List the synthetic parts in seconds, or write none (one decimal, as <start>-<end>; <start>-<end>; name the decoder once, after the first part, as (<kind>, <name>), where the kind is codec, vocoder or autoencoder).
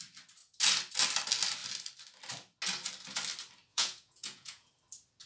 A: 3.7-4.7 (vocoder, Vocos)